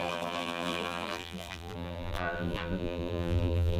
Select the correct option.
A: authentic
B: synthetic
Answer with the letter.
B